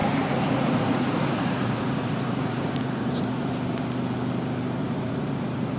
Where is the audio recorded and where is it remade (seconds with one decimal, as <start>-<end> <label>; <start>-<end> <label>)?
0.0-3.5 remade; 3.5-4.8 recorded; 4.8-5.8 remade